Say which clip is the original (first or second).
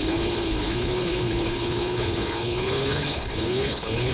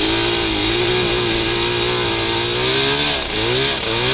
second